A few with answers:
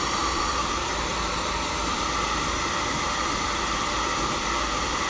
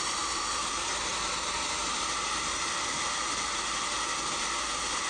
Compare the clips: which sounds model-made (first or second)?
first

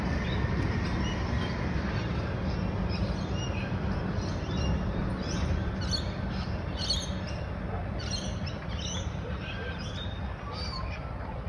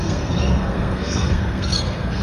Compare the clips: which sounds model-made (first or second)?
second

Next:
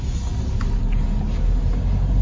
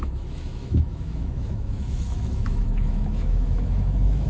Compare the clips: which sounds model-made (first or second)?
second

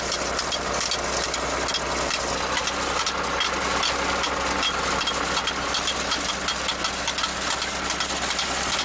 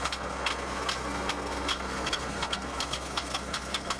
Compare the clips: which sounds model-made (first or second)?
second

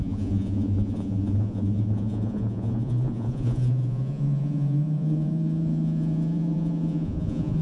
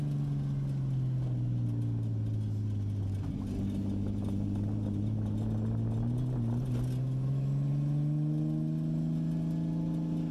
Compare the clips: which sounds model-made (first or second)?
first